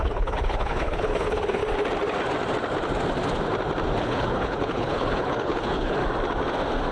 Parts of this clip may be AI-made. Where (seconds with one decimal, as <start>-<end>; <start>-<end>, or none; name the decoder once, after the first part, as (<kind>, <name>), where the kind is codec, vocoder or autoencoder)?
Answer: 0.0-1.6 (codec, HILCodec); 4.0-6.0